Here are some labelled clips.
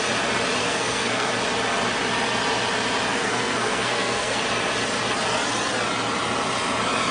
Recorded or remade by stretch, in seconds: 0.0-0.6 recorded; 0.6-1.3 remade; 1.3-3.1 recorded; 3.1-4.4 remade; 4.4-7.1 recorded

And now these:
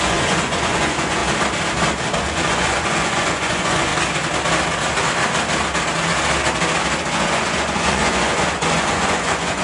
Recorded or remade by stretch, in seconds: 0.0-1.2 remade; 1.2-2.2 recorded; 2.2-3.9 remade; 3.9-7.1 recorded; 7.1-9.6 remade

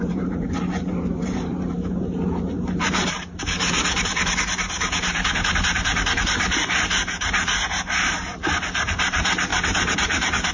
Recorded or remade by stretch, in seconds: 0.0-10.5 remade

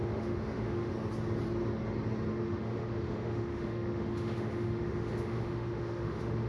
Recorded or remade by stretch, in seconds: 0.0-0.9 remade; 0.9-2.3 recorded; 2.3-6.5 remade

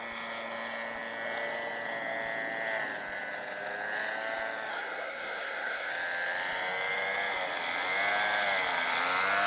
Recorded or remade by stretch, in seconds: 0.0-4.7 recorded; 4.7-5.9 remade; 5.9-9.5 recorded

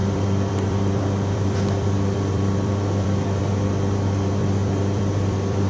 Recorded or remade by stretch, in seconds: 0.0-3.4 remade; 3.4-4.4 recorded; 4.4-5.7 remade

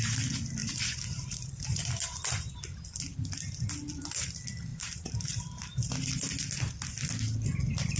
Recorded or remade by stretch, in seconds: 0.0-0.6 recorded; 0.6-1.8 remade; 1.8-4.7 recorded; 4.7-5.9 remade; 5.9-8.0 recorded